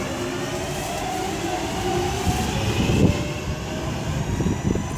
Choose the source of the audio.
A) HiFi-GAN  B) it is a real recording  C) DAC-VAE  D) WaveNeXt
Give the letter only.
B